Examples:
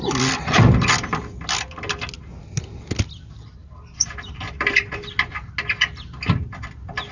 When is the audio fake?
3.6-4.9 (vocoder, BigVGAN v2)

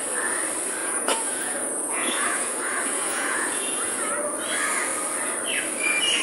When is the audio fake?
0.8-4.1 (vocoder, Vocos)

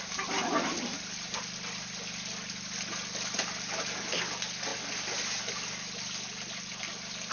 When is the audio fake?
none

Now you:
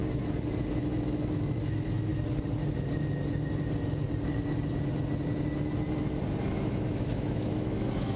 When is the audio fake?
0.8-2.1 (autoencoder, DAC-VAE); 6.5-8.2

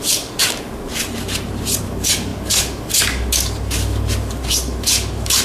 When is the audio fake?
0.0-0.9 (codec, DAC); 1.8-5.4